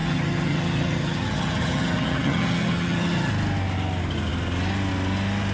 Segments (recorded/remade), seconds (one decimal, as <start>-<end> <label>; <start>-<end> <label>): 0.0-3.3 remade; 3.3-5.5 recorded